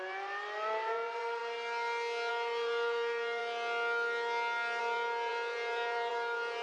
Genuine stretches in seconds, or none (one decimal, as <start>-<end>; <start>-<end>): 1.4-2.3; 3.4-4.8

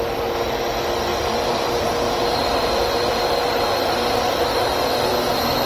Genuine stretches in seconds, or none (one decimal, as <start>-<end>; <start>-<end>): 0.0-1.1; 1.9-2.3; 5.1-5.7

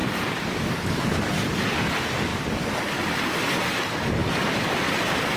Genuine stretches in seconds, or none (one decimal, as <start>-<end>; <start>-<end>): 1.5-5.4

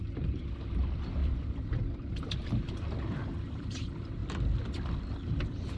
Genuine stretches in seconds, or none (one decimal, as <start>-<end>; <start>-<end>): 4.2-4.9